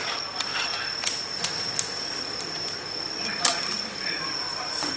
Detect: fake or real real